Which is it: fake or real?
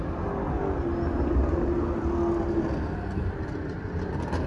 real